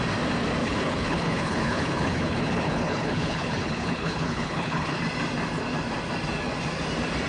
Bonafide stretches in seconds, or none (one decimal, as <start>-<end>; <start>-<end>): 0.0-0.6; 5.0-7.3